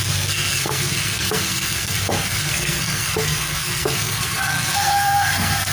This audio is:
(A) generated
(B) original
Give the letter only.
A